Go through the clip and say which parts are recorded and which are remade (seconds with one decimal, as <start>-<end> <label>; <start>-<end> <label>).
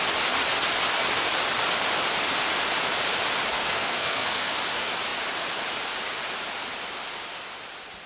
0.0-3.5 recorded; 3.5-4.5 remade; 4.5-8.1 recorded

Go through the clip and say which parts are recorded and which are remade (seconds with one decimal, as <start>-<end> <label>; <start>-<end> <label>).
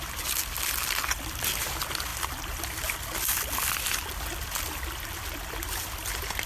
0.0-6.5 recorded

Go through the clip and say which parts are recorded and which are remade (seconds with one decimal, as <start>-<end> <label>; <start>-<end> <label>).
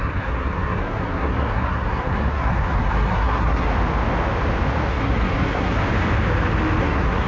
0.0-3.7 remade; 3.7-4.9 recorded; 4.9-5.8 remade; 5.8-6.8 recorded; 6.8-7.3 remade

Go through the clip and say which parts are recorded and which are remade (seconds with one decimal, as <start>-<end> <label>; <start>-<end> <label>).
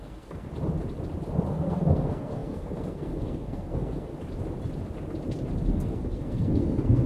0.0-0.5 remade; 0.5-1.5 recorded; 1.5-4.1 remade; 4.1-5.7 recorded; 5.7-7.1 remade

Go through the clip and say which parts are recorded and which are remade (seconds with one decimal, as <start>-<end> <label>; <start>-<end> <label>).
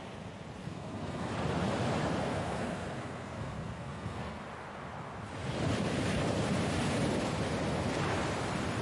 0.0-0.6 recorded; 0.6-1.3 remade; 1.3-2.2 recorded; 2.2-4.4 remade; 4.4-8.8 recorded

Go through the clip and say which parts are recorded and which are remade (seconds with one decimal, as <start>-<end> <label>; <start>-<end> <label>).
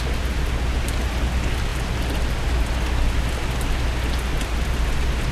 0.0-5.3 recorded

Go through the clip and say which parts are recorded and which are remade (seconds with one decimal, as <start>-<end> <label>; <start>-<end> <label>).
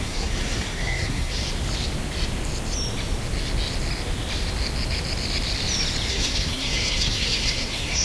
0.0-1.4 remade; 1.4-6.1 recorded; 6.1-8.0 remade